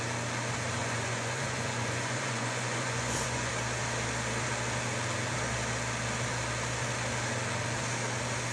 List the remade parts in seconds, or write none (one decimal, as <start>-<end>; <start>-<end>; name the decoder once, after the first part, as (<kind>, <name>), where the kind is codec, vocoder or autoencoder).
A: 0.8-3.5 (vocoder, Vocos)